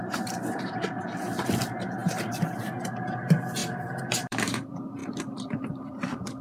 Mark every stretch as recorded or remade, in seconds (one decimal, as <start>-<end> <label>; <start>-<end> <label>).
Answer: 0.0-6.4 remade